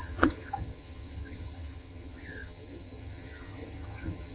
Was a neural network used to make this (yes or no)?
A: yes